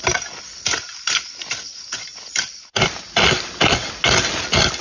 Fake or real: real